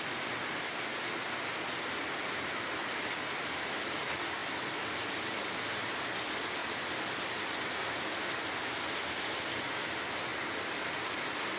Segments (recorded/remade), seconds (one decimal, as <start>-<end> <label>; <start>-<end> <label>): 0.0-11.6 recorded